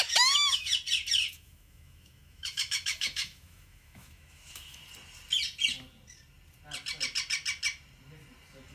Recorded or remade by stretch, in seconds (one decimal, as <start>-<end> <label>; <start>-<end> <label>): 0.0-0.7 remade; 0.7-1.3 recorded; 1.3-4.8 remade; 4.8-8.7 recorded